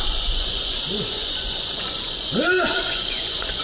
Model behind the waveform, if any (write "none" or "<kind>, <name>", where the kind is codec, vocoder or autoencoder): vocoder, Vocos